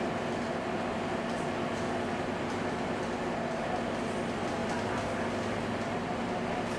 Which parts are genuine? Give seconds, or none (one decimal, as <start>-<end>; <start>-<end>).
0.0-6.8

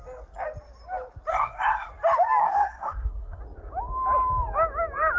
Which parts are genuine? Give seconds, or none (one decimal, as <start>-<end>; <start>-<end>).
0.0-1.3; 1.9-2.4; 3.4-5.2